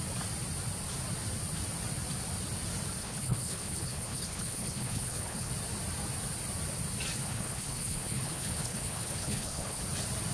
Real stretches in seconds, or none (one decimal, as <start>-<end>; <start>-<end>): 0.0-3.0; 5.5-7.2; 9.8-10.3

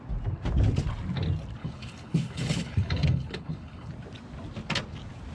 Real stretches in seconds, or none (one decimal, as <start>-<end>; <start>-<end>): 0.0-1.6; 3.9-5.3

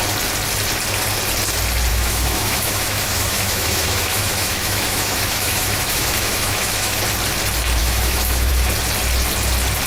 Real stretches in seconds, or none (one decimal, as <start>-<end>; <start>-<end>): 0.0-1.9; 7.0-7.8; 8.5-9.9